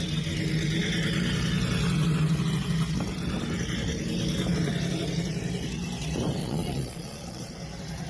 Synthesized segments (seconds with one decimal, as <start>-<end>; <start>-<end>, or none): 6.4-7.4